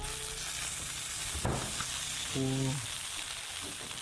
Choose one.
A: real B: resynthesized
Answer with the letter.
A